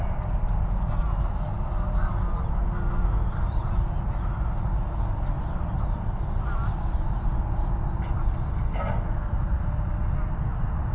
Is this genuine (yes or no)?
yes